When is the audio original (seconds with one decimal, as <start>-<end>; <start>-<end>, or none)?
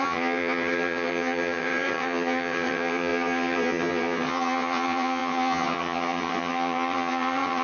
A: none